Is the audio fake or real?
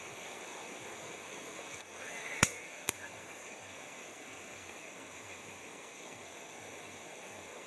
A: fake